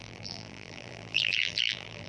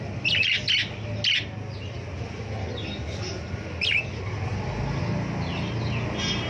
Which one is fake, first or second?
first